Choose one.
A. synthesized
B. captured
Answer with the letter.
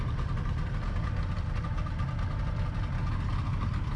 B